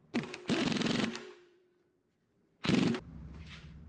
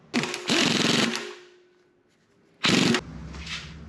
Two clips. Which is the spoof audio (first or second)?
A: first